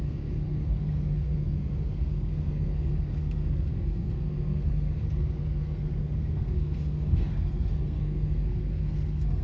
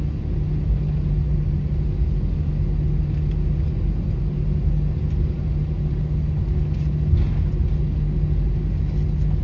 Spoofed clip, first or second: first